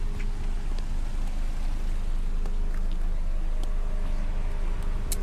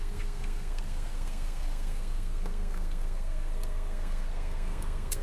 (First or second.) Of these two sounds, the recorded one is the first